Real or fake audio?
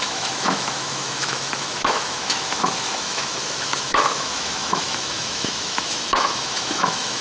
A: fake